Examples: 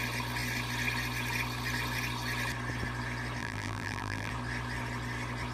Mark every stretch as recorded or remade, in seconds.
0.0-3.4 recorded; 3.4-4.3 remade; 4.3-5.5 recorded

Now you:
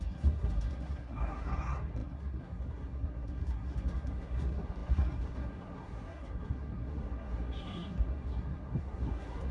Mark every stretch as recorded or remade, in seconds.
0.0-9.5 remade

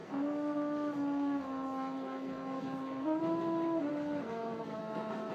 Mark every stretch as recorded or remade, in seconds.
0.0-3.2 remade; 3.2-3.9 recorded; 3.9-5.3 remade

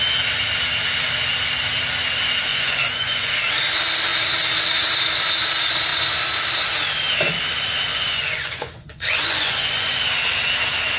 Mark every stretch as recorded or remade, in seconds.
0.0-2.5 recorded; 2.5-3.3 remade; 3.3-7.9 recorded; 7.9-10.0 remade; 10.0-11.0 recorded

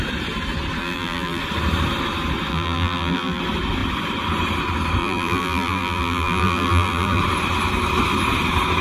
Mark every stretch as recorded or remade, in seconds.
0.0-0.8 recorded; 0.8-1.4 remade; 1.4-2.5 recorded; 2.5-3.4 remade; 3.4-5.0 recorded; 5.0-7.2 remade; 7.2-8.8 recorded